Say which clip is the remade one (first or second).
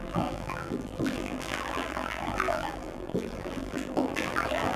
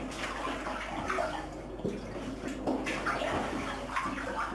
first